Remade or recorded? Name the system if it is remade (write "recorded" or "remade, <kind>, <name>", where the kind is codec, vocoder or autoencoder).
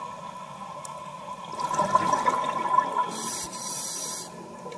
recorded